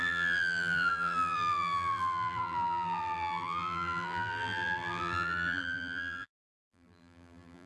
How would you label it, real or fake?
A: fake